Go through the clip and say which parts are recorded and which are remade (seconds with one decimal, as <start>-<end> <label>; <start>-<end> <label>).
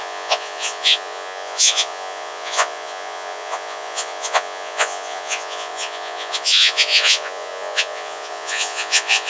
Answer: 0.0-9.3 remade